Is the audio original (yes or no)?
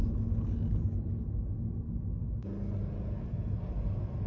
yes